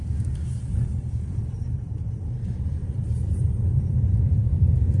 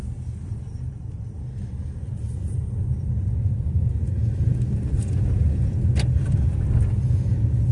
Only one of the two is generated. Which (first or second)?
first